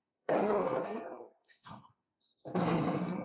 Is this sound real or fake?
fake